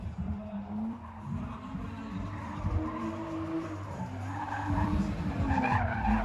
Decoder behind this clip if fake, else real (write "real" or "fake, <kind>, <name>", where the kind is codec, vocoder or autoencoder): fake, vocoder, BigVGAN v2